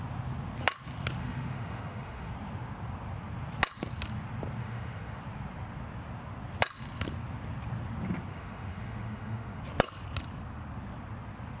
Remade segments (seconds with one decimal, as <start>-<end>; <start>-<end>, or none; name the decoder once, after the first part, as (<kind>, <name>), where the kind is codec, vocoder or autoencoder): 1.2-2.3 (autoencoder, DAC-VAE); 4.6-5.2; 8.3-9.6